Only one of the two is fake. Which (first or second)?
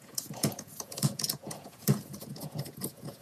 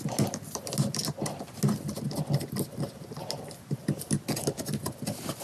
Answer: first